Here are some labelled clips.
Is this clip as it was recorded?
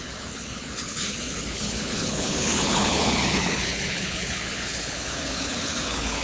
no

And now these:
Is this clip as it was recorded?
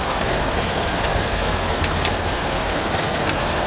no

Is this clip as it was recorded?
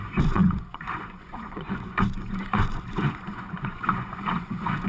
no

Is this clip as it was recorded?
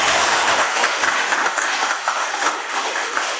no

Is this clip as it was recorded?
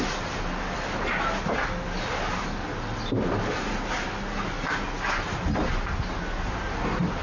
yes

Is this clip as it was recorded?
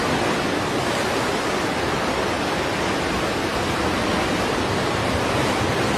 yes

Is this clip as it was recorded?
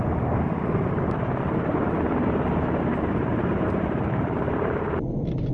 no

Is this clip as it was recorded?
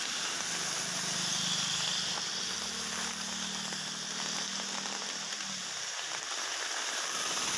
yes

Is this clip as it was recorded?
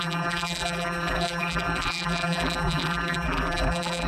no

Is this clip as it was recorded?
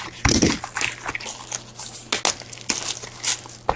yes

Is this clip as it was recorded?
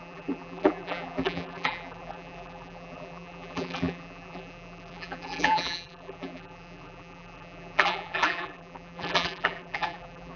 no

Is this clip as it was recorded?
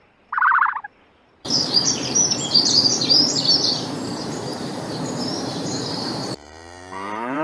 no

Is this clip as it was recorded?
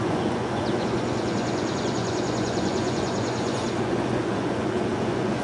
no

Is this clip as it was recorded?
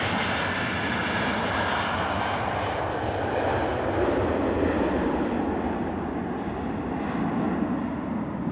yes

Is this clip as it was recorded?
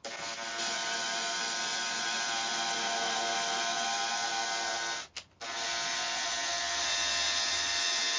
yes